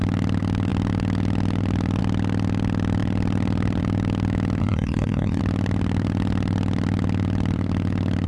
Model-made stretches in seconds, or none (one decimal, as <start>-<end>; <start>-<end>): 4.6-5.4